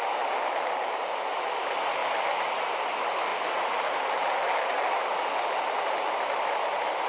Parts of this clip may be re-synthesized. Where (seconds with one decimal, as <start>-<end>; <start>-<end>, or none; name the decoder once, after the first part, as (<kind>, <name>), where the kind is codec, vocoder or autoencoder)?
none